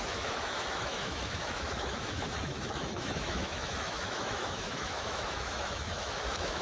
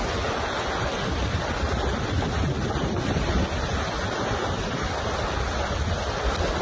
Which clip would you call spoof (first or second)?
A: first